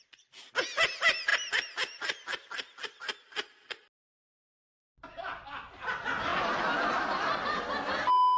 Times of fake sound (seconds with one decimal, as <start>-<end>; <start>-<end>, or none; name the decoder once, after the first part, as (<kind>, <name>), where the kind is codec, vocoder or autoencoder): none